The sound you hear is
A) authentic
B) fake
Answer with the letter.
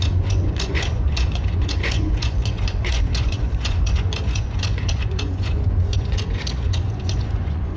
B